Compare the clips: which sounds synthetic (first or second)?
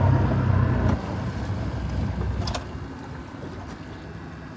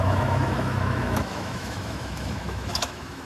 second